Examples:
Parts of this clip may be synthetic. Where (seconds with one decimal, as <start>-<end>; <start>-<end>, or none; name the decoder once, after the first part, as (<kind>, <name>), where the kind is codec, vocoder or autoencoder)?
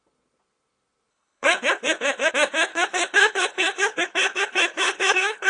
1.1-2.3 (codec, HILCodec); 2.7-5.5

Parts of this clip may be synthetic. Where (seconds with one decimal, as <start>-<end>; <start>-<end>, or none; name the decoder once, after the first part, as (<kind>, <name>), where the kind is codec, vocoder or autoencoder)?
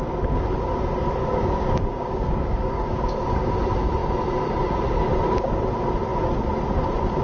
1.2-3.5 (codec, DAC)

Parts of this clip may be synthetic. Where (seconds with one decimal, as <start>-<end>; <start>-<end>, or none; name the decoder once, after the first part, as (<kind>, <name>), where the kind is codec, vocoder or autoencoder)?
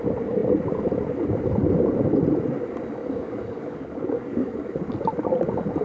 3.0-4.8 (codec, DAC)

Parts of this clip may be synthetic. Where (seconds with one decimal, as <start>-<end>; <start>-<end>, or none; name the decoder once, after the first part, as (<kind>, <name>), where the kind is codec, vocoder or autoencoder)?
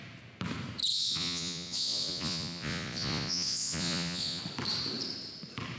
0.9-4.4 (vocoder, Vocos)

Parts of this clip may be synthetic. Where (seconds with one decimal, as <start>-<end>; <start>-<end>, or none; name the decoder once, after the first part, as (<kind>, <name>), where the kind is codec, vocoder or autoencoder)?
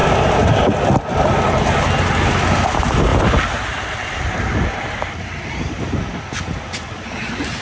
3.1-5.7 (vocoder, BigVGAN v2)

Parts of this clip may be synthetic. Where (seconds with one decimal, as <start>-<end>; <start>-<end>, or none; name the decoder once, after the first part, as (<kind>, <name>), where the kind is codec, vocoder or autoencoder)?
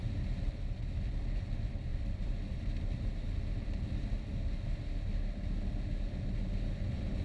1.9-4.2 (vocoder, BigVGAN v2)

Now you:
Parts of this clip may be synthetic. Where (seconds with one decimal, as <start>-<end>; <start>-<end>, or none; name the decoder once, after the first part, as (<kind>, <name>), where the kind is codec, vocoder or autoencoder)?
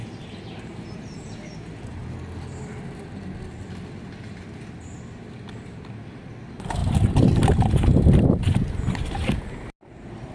0.0-1.3 (vocoder, BigVGAN v2); 6.8-9.3